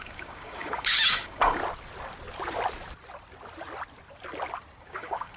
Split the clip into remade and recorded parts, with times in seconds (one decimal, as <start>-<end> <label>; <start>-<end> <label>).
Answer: 0.0-1.6 remade; 1.6-4.8 recorded; 4.8-5.4 remade